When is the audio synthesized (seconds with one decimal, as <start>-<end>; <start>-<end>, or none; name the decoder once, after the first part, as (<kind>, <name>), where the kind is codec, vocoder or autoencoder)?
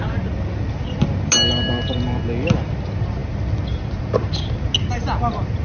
none